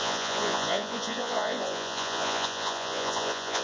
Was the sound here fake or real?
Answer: fake